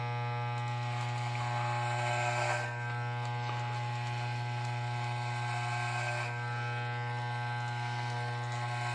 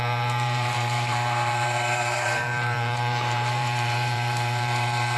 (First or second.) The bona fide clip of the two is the first